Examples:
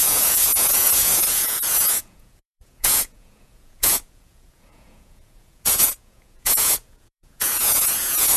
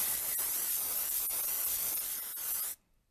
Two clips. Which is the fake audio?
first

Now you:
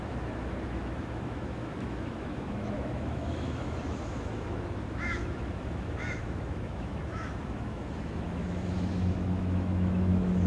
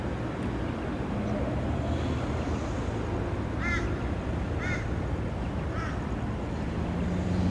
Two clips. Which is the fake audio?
first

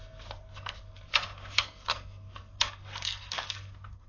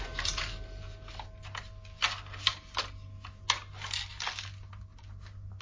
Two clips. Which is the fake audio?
first